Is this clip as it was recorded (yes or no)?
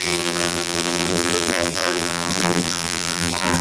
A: no